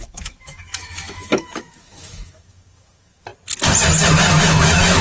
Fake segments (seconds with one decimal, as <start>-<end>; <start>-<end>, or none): 0.0-3.3; 4.4-5.0